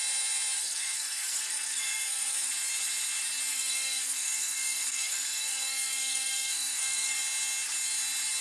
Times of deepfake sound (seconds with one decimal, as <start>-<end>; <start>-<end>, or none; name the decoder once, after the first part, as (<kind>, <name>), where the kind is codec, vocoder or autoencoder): 0.6-2.5 (codec, SNAC); 3.5-7.2